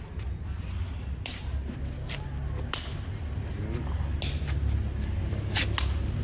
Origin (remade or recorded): recorded